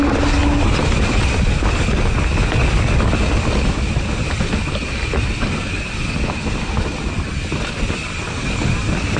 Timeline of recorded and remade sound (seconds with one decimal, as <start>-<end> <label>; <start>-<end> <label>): 0.0-9.2 recorded